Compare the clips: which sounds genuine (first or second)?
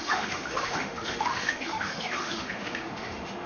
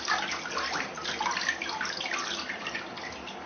second